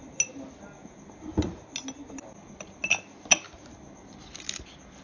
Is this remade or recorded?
recorded